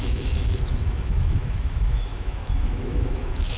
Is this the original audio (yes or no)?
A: no